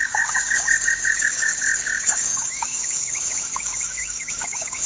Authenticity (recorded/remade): remade